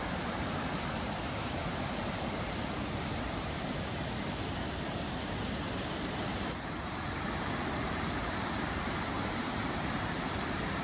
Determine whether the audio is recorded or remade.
remade